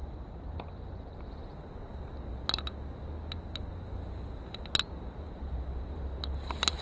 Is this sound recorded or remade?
recorded